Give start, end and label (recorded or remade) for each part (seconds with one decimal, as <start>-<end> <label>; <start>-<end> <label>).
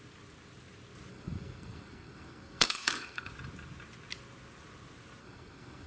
0.0-1.1 recorded; 1.1-3.3 remade; 3.3-5.2 recorded; 5.2-5.9 remade